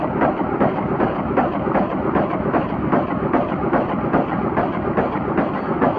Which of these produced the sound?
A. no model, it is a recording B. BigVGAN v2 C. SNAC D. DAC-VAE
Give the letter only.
A